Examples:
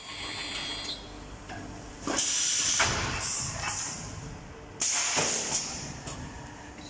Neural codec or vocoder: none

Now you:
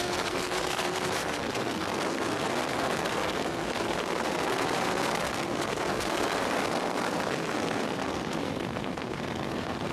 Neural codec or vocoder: codec, SNAC